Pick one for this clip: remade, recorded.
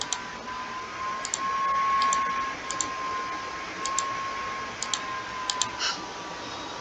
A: recorded